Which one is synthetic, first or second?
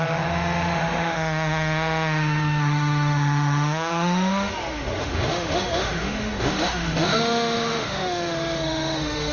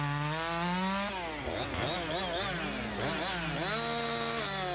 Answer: first